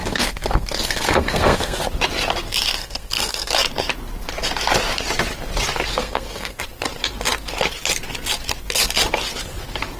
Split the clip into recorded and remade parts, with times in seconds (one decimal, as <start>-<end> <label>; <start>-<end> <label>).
0.0-1.8 remade; 1.8-2.8 recorded; 2.8-3.5 remade; 3.5-5.9 recorded; 5.9-6.6 remade; 6.6-10.0 recorded